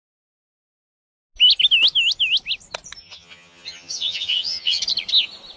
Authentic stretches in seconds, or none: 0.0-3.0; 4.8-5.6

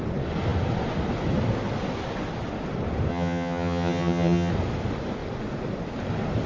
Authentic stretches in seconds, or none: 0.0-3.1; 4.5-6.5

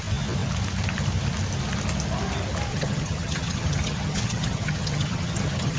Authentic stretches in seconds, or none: 0.0-2.7

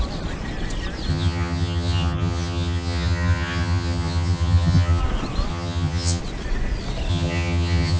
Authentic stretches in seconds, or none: 0.0-1.1; 5.0-5.5; 6.2-7.1